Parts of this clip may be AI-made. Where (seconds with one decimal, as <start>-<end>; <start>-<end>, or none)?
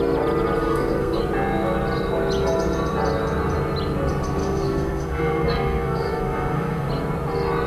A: 0.6-1.2; 4.4-6.9